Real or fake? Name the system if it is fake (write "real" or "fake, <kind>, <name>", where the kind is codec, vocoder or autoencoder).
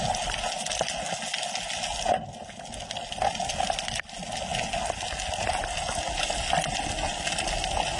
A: real